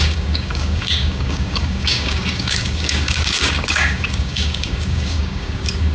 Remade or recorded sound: remade